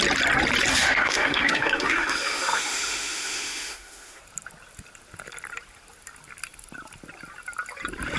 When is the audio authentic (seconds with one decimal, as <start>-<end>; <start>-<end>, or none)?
0.0-0.7; 4.2-8.2